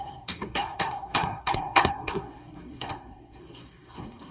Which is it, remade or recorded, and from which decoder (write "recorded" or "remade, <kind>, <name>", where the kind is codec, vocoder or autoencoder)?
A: remade, codec, SNAC